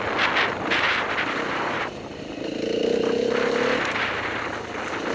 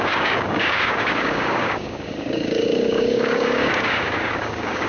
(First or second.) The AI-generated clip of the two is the second